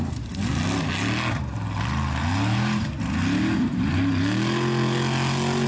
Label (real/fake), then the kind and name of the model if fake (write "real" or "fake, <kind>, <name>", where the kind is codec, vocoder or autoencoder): real